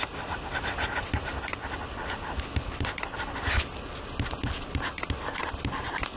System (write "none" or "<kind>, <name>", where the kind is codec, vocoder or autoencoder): none